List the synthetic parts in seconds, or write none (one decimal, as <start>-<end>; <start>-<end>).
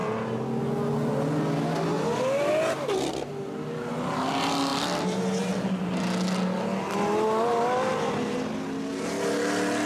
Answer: none